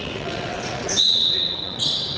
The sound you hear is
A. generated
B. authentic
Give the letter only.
A